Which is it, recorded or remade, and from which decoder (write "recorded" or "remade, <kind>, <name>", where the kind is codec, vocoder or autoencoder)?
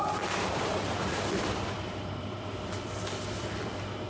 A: remade, vocoder, BigVGAN v2